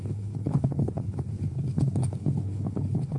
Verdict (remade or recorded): remade